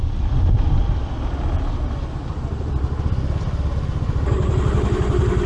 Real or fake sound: real